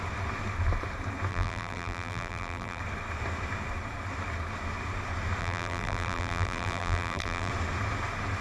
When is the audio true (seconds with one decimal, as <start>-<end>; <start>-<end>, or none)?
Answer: 0.0-1.3; 2.8-5.4; 7.5-8.4